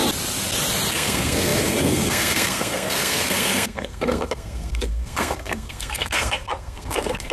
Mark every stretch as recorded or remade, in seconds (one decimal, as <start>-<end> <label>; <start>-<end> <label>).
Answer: 0.0-0.9 recorded; 0.9-7.3 remade